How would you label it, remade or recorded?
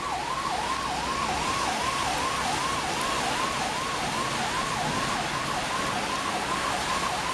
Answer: recorded